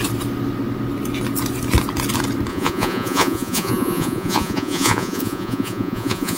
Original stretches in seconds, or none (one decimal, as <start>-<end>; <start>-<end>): 0.0-2.5